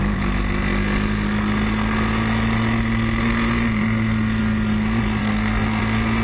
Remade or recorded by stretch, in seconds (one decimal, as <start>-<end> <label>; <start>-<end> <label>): 0.0-5.2 recorded; 5.2-5.8 remade; 5.8-6.2 recorded